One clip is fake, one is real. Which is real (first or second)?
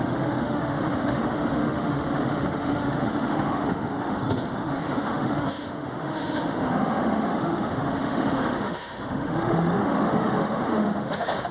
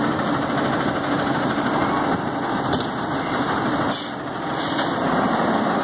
second